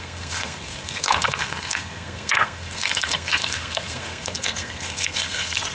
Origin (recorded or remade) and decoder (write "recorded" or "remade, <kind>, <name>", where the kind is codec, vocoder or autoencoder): remade, codec, SNAC